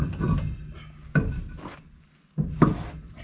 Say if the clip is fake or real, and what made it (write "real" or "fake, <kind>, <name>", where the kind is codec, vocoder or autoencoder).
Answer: real